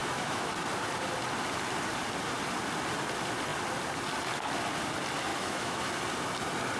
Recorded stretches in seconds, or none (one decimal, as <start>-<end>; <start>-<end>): 0.5-5.3; 5.9-6.8